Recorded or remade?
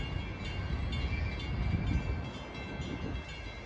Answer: recorded